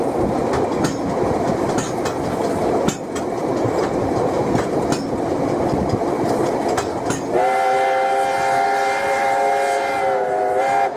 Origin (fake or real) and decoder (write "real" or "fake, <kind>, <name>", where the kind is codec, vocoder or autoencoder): real